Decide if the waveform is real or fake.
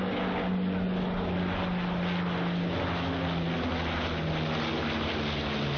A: real